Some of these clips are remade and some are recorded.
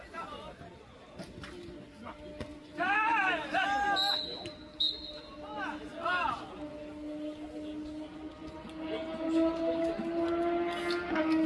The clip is recorded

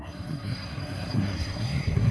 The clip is remade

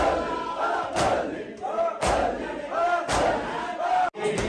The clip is recorded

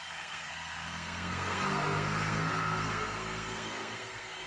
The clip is remade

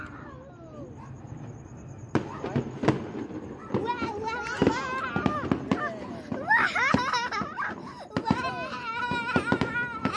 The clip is recorded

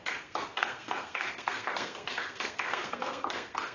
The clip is remade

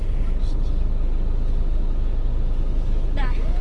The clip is recorded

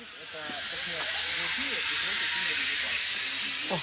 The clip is recorded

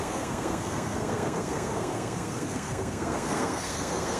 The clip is remade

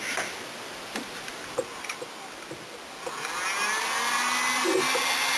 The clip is recorded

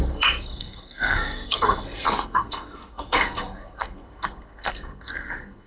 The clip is remade